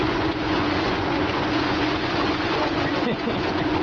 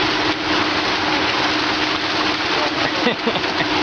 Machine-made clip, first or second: first